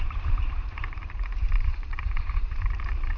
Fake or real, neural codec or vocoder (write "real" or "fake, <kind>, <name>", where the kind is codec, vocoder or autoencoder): fake, vocoder, BigVGAN v2